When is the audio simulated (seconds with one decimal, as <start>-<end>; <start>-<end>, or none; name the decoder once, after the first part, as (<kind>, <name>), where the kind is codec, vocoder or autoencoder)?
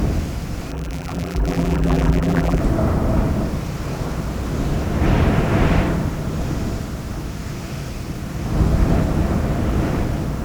0.7-2.6 (vocoder, BigVGAN v2)